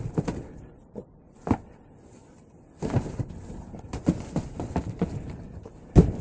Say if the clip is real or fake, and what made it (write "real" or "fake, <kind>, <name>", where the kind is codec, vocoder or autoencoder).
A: fake, vocoder, BigVGAN v2